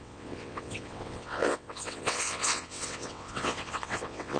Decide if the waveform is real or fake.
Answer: fake